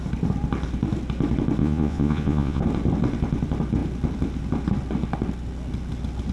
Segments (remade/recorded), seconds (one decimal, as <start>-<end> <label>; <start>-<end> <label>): 0.0-1.6 recorded; 1.6-2.6 remade; 2.6-6.3 recorded